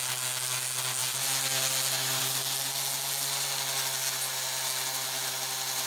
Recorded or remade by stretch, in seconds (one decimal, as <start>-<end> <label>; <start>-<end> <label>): 0.0-5.9 recorded